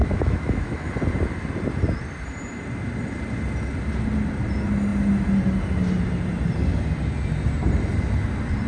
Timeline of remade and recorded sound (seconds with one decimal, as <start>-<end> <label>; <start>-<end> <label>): 0.0-0.9 remade; 0.9-8.7 recorded